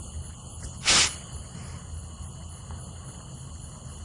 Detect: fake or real real